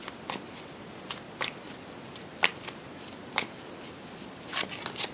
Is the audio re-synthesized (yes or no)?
no